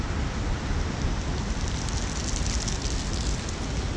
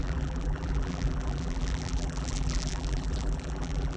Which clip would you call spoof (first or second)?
second